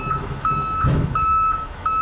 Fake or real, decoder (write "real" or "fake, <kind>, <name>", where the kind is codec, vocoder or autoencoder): fake, autoencoder, DAC-VAE